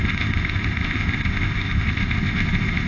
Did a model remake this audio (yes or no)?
yes